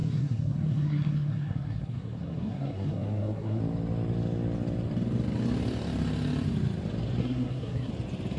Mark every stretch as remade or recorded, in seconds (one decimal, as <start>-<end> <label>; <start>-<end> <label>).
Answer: 0.0-3.6 remade; 3.6-7.2 recorded; 7.2-7.9 remade; 7.9-8.4 recorded